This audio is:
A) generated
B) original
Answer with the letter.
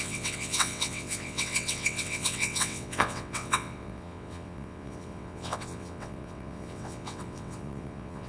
A